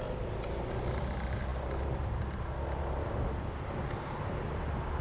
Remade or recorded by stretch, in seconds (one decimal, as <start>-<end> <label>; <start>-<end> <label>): 0.0-5.0 recorded